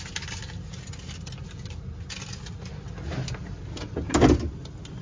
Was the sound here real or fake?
real